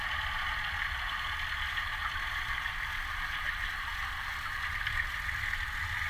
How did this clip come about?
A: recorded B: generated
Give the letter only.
A